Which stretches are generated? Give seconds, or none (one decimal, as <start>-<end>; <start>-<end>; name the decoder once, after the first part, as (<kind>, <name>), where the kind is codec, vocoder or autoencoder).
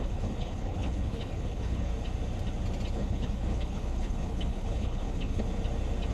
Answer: 0.0-1.9 (codec, HILCodec); 2.9-5.4